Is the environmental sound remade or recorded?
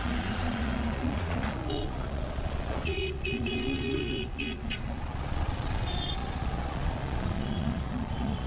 remade